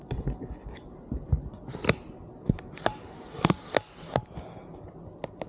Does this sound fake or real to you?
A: real